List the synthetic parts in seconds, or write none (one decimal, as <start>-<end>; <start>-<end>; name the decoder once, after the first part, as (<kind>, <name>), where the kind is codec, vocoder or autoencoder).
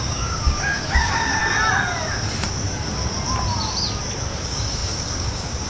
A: 0.0-1.4 (codec, DAC); 4.3-5.7